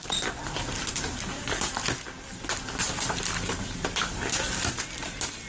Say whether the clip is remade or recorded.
recorded